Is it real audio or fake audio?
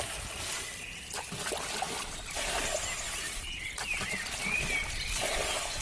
real